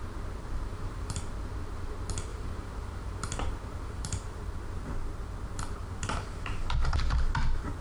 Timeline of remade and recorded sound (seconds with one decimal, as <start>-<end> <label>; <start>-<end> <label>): 0.0-0.7 recorded; 0.7-1.2 remade; 1.2-2.3 recorded; 2.3-4.4 remade; 4.4-5.8 recorded; 5.8-6.6 remade; 6.6-7.8 recorded